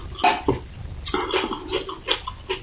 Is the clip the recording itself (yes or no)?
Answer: yes